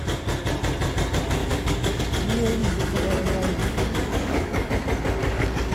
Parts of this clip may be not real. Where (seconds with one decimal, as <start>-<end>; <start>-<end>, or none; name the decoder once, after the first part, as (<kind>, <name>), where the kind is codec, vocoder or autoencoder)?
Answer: 1.4-2.0 (codec, DAC); 2.6-3.1; 3.6-4.7; 5.2-5.7